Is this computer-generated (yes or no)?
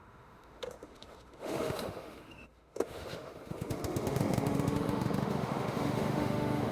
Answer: yes